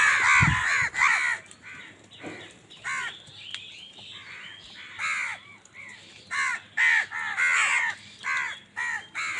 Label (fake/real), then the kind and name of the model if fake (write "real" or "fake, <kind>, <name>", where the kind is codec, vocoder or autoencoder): real